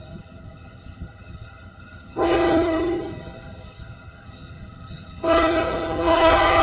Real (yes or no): no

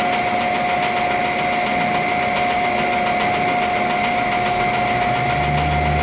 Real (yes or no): yes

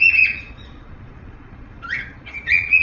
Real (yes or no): no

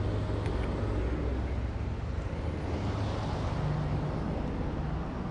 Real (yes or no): yes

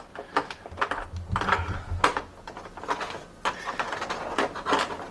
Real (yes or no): yes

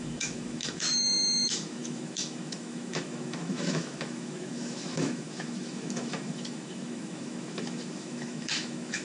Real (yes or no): no